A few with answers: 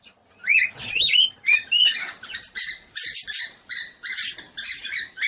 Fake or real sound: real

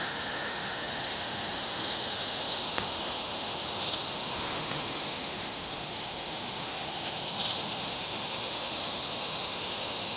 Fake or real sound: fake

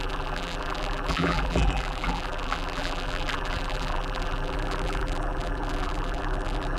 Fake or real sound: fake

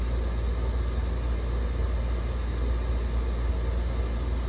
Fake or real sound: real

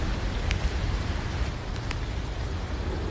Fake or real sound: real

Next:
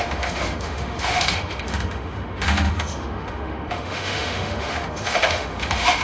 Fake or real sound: fake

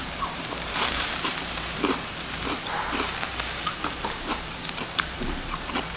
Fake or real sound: fake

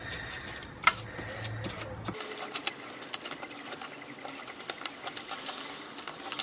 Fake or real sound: real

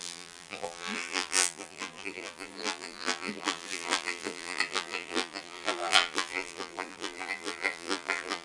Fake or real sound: fake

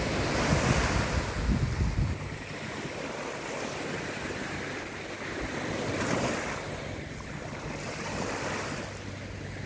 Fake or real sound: real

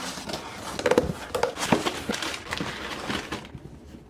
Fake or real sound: real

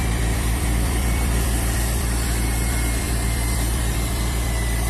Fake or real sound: fake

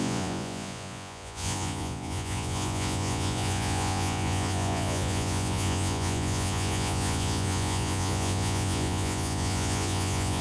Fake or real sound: fake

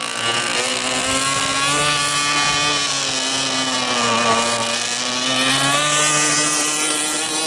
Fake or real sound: real